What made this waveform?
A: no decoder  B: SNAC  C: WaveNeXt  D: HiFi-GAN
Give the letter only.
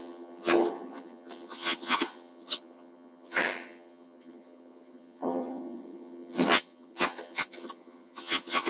D